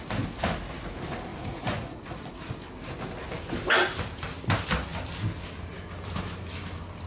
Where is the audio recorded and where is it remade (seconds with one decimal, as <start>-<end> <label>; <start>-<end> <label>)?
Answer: 0.0-1.3 recorded; 1.3-2.3 remade; 2.3-7.1 recorded